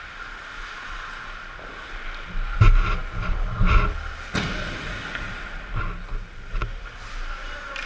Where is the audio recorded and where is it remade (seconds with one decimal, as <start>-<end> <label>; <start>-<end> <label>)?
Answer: 0.0-7.9 recorded